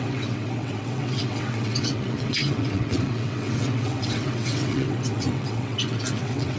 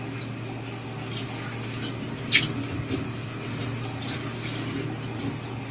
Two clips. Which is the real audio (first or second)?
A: second